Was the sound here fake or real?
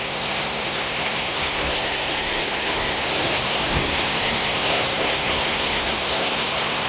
fake